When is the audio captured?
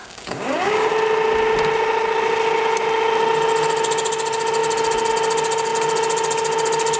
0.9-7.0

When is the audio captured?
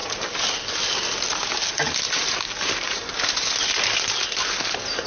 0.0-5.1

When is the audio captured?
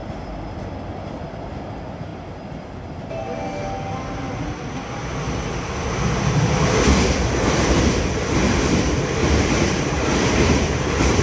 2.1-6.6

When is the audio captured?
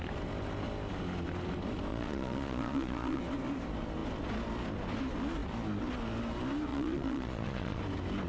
0.0-1.9; 3.2-6.7; 7.8-8.3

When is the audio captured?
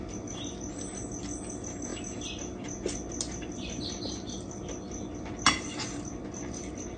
0.0-7.0